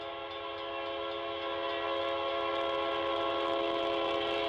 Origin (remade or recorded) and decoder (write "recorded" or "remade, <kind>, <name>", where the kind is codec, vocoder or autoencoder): recorded